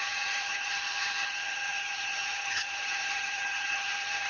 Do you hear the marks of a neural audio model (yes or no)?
yes